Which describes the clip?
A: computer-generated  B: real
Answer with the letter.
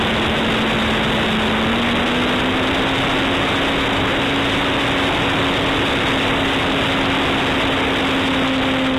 B